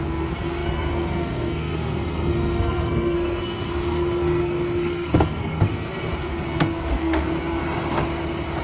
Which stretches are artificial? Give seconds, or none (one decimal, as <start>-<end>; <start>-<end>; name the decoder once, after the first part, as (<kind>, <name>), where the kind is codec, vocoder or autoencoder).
0.0-7.6 (codec, SNAC)